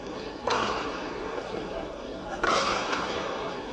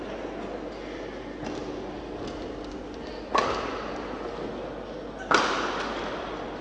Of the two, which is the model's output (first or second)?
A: first